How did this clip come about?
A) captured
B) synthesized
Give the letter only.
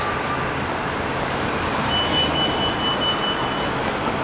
A